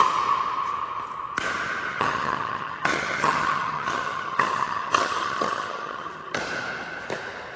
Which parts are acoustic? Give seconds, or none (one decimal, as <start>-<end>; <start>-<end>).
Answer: 0.0-1.9; 6.4-7.6